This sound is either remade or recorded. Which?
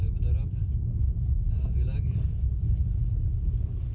recorded